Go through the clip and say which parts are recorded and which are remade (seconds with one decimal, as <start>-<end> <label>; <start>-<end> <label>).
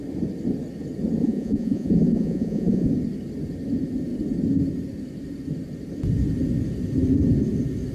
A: 0.0-1.2 recorded; 1.2-2.9 remade; 2.9-7.9 recorded